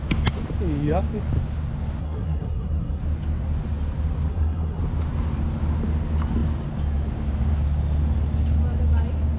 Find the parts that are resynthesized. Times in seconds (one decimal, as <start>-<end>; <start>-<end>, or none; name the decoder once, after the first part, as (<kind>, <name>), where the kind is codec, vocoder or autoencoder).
2.0-3.0 (codec, SNAC); 4.3-4.8

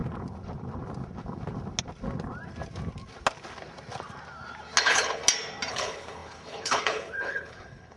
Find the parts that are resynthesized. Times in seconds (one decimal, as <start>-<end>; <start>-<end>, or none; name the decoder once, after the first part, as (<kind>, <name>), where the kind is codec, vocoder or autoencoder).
4.8-5.2 (codec, HILCodec); 5.7-8.0